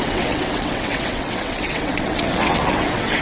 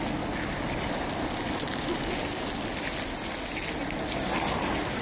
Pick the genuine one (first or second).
second